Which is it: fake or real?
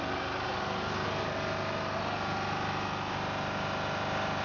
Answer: real